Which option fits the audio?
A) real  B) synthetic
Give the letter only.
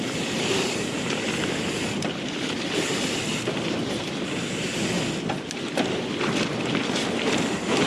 B